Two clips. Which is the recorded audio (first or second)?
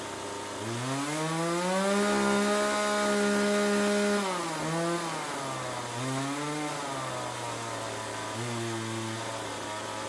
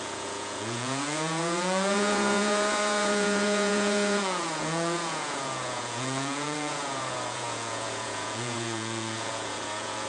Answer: first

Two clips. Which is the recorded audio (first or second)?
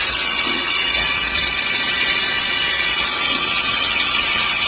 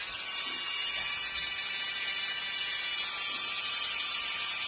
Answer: second